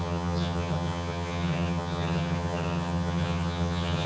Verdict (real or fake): fake